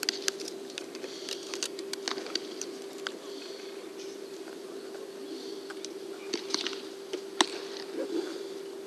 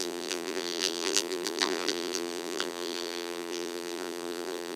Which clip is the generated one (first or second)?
second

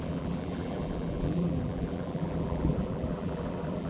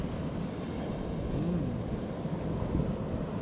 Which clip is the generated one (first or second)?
first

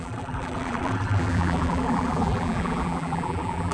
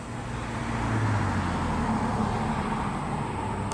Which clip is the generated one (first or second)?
first